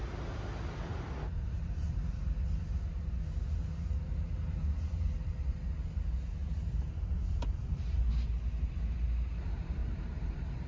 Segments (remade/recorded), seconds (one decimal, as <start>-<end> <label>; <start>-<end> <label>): 0.0-0.9 recorded; 0.9-2.1 remade; 2.1-6.4 recorded; 6.4-8.0 remade; 8.0-9.8 recorded; 9.8-10.7 remade